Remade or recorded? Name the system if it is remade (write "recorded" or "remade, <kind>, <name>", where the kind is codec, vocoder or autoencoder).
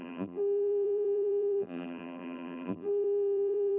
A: remade, vocoder, BigVGAN v2